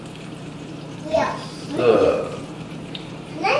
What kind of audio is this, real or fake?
fake